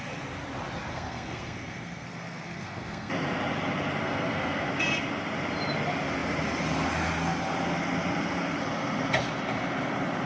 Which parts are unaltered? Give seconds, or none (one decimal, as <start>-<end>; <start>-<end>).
0.0-0.9; 3.1-4.0; 4.7-10.3